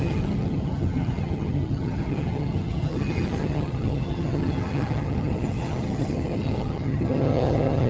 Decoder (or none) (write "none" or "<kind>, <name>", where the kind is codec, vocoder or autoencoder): vocoder, HiFi-GAN